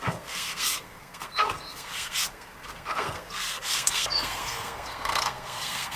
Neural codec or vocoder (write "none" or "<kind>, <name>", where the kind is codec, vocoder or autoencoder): codec, SNAC